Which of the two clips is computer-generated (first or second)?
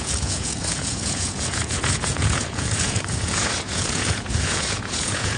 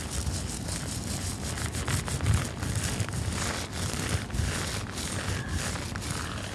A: first